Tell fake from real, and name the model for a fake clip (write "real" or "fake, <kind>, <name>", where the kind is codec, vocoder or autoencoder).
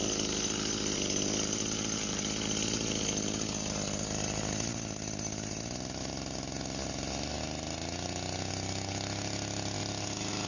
real